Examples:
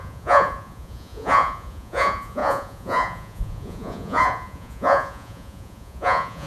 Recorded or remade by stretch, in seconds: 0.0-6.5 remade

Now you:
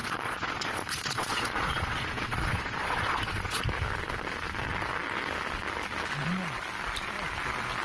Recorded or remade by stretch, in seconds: 0.0-3.6 remade; 3.6-7.8 recorded

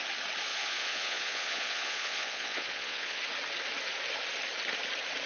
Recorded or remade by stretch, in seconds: 0.0-0.5 recorded; 0.5-3.2 remade; 3.2-5.3 recorded

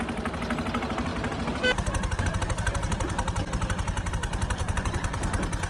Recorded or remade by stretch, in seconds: 0.0-4.6 recorded; 4.6-5.2 remade; 5.2-5.7 recorded

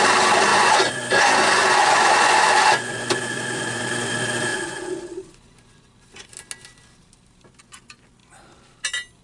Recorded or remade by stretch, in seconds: 0.0-0.5 recorded; 0.5-3.8 remade; 3.8-4.5 recorded; 4.5-6.3 remade; 6.3-9.2 recorded